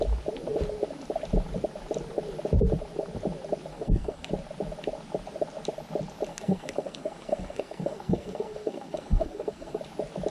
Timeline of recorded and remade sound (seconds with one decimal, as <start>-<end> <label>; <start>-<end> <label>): 0.0-3.7 recorded; 3.7-4.3 remade; 4.3-6.3 recorded; 6.3-9.8 remade; 9.8-10.3 recorded